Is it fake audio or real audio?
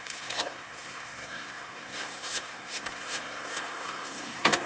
fake